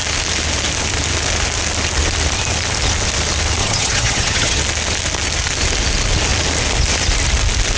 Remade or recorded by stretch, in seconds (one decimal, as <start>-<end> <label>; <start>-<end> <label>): 0.0-3.6 recorded; 3.6-4.6 remade; 4.6-7.8 recorded